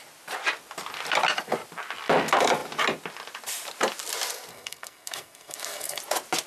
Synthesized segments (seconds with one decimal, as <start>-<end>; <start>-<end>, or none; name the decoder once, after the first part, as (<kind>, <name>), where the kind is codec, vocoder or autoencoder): 4.5-6.0 (codec, SNAC)